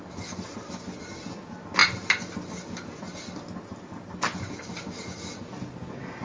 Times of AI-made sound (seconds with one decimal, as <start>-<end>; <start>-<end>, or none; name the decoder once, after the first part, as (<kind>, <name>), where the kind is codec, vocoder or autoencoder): none